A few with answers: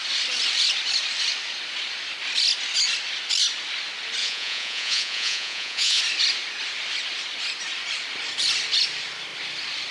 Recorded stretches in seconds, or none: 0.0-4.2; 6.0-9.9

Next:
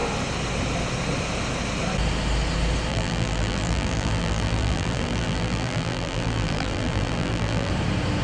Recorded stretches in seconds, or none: 0.0-2.9; 7.7-8.2